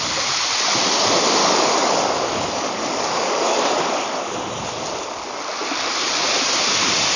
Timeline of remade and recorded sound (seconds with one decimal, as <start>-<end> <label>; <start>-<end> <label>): 0.0-1.4 recorded; 1.4-4.5 remade; 4.5-7.2 recorded